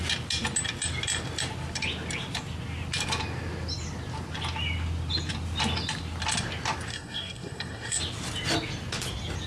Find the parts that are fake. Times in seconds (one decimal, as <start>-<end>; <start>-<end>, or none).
6.9-8.0